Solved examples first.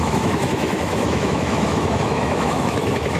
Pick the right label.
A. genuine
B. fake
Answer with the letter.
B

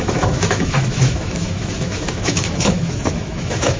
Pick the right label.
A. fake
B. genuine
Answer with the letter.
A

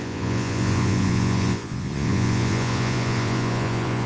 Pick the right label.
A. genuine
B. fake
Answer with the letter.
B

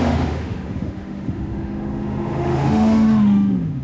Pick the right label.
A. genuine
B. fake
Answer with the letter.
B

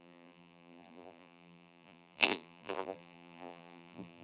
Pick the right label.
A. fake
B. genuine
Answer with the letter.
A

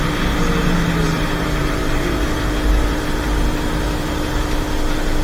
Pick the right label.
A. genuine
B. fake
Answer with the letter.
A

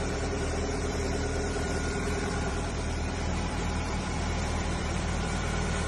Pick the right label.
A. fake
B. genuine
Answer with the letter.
A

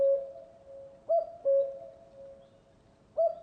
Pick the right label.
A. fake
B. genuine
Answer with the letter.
B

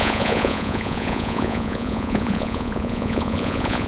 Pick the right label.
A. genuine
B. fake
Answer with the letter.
B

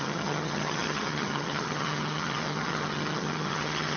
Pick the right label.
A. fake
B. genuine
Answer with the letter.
A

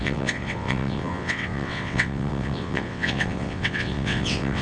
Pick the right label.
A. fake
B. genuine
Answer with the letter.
A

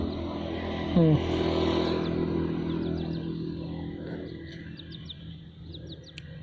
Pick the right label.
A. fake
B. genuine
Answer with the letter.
B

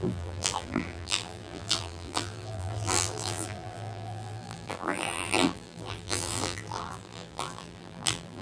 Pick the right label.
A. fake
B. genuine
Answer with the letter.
A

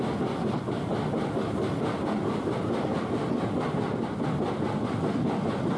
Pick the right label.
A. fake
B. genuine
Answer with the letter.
B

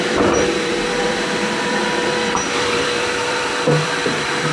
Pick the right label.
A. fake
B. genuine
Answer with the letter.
A